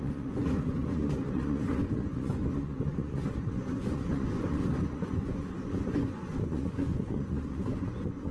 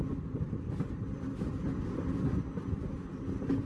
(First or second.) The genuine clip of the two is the second